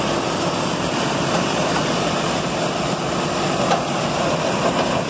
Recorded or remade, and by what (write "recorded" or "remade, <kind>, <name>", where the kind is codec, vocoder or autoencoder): recorded